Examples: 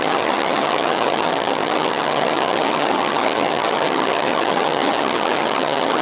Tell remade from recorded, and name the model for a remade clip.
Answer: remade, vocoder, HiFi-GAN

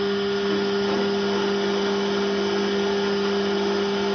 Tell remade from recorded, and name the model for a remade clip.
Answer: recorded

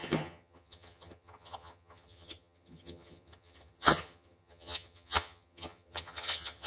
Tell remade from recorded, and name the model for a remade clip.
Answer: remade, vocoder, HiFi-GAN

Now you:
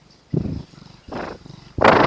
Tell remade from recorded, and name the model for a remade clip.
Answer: recorded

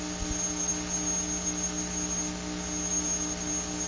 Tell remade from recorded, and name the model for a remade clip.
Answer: recorded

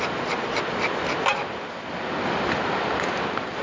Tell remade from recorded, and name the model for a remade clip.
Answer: recorded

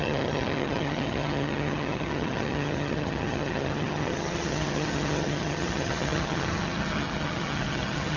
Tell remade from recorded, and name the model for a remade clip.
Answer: remade, vocoder, HiFi-GAN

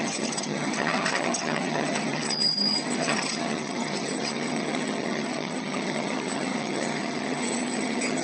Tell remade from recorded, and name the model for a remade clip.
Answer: remade, vocoder, HiFi-GAN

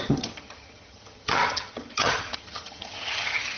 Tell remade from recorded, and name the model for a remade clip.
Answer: remade, vocoder, HiFi-GAN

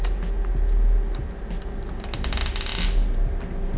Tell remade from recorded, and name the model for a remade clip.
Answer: recorded